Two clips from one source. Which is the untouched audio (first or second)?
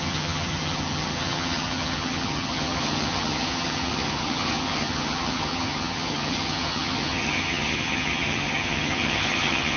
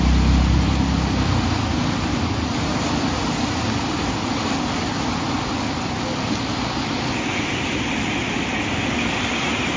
second